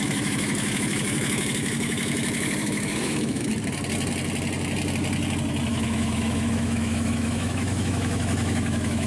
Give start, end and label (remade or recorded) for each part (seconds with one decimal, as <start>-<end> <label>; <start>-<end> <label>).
0.0-3.5 remade; 3.5-5.7 recorded; 5.7-9.1 remade